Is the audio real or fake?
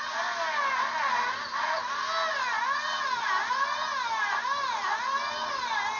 real